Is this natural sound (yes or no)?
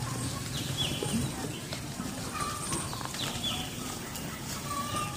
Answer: no